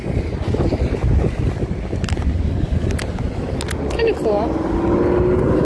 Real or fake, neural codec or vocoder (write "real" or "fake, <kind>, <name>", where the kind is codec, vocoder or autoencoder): real